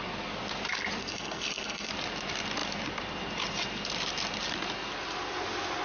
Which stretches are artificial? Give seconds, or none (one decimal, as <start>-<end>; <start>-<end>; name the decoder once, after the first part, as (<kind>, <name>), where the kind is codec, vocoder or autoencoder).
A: 1.0-1.9 (codec, SNAC)